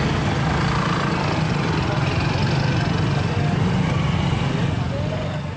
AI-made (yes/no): no